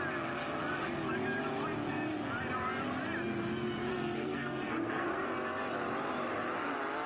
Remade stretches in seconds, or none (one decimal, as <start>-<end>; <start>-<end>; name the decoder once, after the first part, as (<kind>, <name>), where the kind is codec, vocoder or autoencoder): 3.9-5.3 (codec, SNAC)

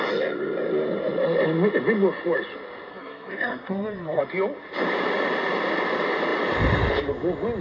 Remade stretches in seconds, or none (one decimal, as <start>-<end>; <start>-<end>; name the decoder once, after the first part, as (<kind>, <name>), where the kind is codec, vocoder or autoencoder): 2.9-4.2 (codec, SNAC)